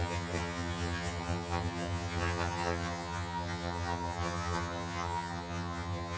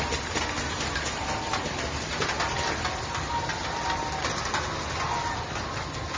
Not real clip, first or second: first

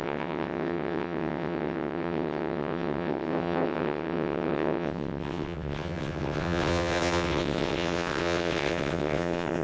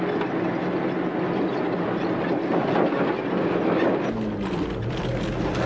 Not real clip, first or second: first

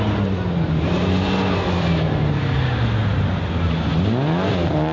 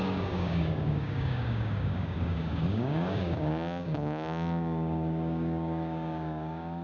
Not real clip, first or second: second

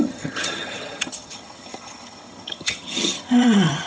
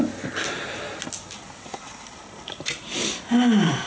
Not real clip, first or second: first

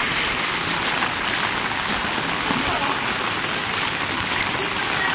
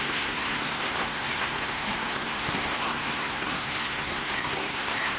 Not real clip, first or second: second